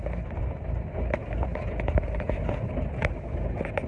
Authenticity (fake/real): real